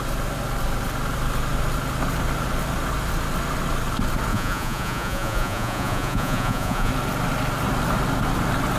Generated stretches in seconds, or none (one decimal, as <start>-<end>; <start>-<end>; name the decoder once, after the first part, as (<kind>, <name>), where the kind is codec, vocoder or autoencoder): 4.3-6.9 (vocoder, Vocos)